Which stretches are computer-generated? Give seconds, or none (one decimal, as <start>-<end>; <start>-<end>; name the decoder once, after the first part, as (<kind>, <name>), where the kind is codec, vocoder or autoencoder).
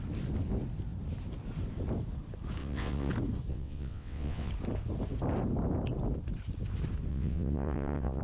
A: 2.6-3.1 (vocoder, WaveNeXt); 3.5-4.5; 7.1-8.2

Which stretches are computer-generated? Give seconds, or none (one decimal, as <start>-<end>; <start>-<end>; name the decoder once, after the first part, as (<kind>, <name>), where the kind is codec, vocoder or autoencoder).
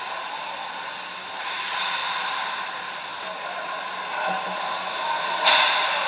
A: 0.0-2.0 (vocoder, BigVGAN v2); 2.7-3.1